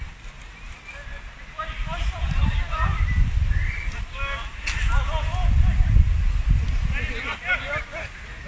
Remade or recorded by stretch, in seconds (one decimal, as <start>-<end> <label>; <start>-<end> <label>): 0.0-8.5 recorded